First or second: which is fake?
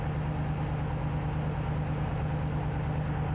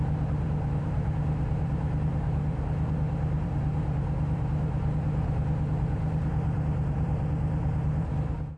second